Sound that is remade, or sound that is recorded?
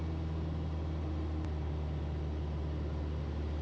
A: recorded